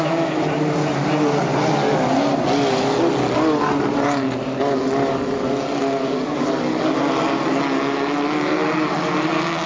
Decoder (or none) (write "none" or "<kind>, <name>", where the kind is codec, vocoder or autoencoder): none